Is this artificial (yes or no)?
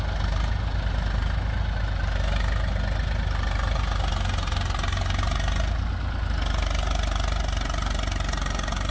no